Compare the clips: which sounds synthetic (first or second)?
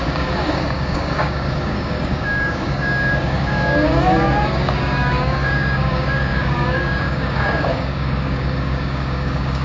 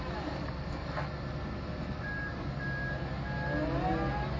first